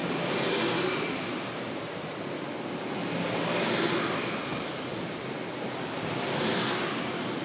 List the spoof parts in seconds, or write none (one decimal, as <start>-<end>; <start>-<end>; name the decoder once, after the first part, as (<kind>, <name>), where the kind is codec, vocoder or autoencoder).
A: none